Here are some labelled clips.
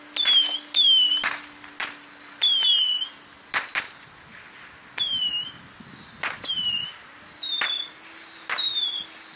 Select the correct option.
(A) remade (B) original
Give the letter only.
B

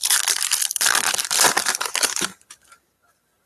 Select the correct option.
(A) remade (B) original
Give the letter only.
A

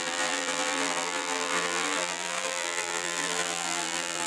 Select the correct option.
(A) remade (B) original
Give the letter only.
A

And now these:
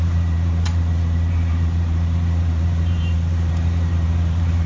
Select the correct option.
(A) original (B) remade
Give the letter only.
B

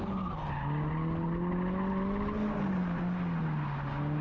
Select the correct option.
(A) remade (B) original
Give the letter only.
B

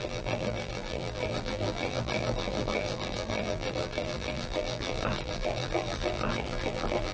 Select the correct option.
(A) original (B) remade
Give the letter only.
B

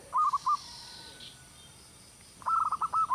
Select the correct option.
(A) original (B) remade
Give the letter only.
A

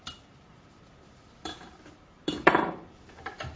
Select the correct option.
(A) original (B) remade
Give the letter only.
B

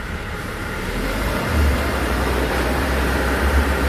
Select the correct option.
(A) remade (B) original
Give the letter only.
A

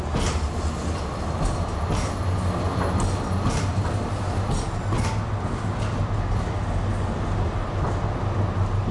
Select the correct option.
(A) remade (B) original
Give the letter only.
B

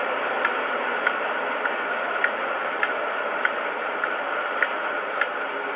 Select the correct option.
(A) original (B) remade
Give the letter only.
B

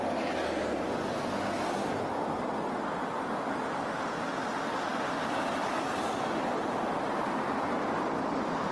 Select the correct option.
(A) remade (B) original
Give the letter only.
B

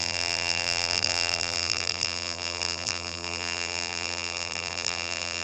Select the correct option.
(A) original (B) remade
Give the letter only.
B